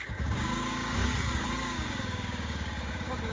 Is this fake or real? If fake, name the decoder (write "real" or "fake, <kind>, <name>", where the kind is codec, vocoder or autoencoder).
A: fake, codec, DAC